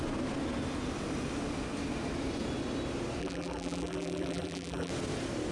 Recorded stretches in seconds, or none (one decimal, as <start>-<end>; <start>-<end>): 0.0-3.2; 4.9-5.5